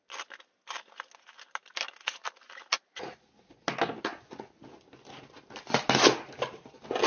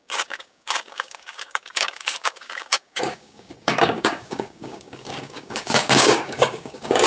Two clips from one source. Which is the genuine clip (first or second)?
first